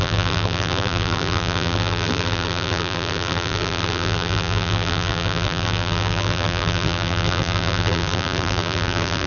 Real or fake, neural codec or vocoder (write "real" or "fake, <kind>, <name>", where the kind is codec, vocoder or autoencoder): fake, vocoder, BigVGAN v2